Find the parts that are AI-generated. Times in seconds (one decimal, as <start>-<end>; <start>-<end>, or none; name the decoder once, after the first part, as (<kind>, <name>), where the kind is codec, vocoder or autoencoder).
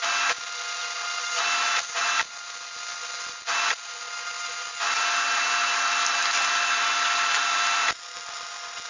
none